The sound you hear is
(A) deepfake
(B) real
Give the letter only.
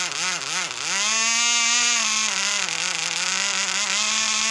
B